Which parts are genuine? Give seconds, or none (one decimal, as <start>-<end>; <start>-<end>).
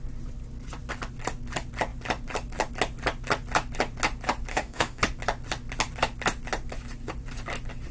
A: 0.0-4.5; 5.0-7.9